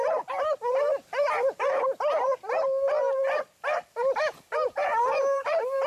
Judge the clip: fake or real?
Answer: real